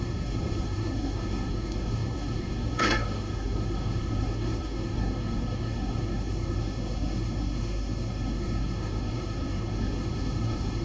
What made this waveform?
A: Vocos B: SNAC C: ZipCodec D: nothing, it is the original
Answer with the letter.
B